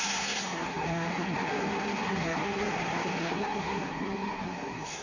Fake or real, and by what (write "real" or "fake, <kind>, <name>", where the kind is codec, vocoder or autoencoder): fake, codec, SNAC